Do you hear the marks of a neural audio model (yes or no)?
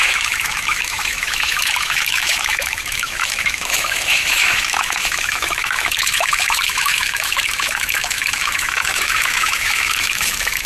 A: yes